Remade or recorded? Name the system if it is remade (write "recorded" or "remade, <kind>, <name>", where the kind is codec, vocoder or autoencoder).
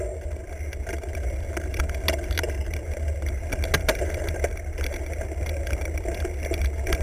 recorded